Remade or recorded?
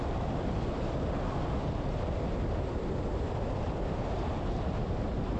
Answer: recorded